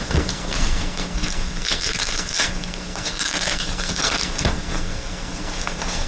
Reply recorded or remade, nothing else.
remade